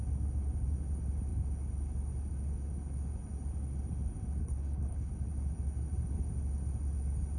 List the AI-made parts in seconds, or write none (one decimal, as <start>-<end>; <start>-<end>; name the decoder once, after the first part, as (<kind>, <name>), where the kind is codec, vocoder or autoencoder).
4.4-5.1 (codec, HILCodec)